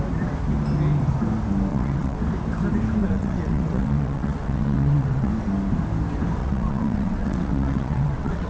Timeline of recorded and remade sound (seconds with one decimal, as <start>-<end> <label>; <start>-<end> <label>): 0.0-1.7 recorded; 1.7-2.2 remade; 2.2-3.0 recorded; 3.0-5.3 remade; 5.3-6.4 recorded; 6.4-8.5 remade